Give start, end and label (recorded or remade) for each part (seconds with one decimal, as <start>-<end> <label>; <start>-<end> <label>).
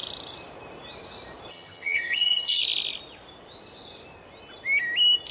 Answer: 0.0-1.5 recorded; 1.5-2.6 remade; 2.6-5.3 recorded